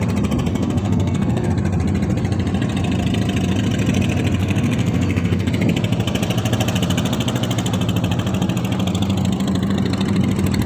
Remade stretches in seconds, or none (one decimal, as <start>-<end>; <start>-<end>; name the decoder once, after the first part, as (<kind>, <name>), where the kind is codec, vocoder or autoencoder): 0.5-1.5 (codec, SNAC); 4.4-5.5